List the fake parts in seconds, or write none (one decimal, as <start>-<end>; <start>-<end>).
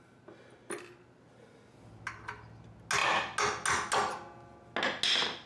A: none